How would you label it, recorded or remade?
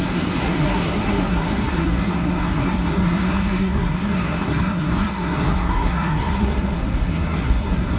remade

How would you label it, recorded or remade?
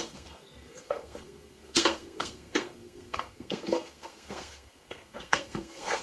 remade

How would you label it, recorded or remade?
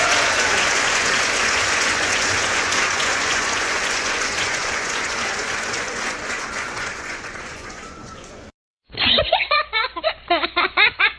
remade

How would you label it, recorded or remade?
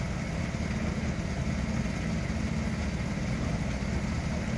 recorded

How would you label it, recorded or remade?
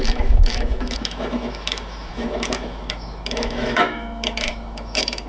remade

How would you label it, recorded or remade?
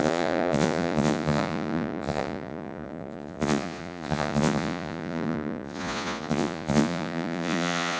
remade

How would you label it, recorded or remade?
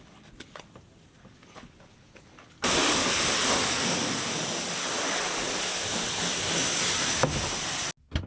recorded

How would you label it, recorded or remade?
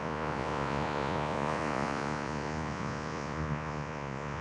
remade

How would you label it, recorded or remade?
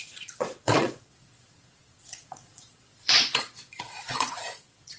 remade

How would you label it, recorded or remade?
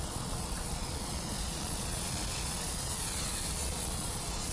remade